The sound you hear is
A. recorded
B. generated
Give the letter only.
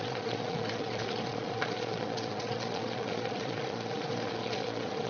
B